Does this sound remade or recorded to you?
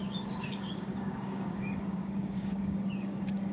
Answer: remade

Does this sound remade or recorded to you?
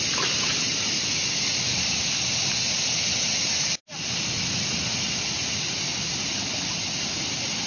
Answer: recorded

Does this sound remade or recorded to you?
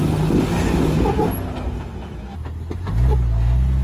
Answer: recorded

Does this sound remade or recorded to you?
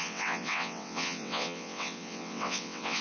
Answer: remade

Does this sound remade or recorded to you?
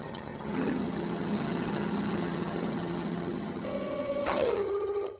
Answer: remade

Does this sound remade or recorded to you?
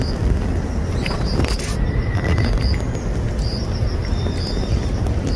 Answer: recorded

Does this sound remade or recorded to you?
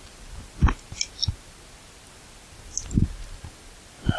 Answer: recorded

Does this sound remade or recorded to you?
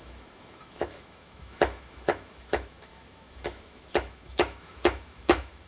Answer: remade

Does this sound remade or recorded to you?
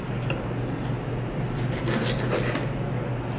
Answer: recorded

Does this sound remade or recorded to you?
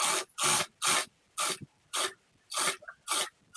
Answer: recorded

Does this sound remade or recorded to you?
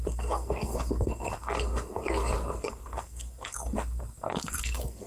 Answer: remade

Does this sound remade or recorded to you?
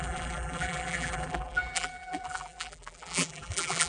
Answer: remade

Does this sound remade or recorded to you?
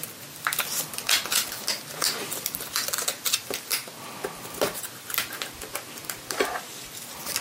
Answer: recorded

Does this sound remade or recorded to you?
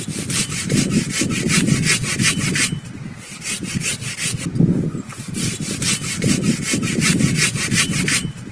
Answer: recorded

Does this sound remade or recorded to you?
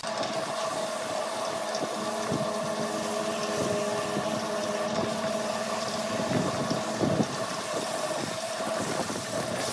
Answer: recorded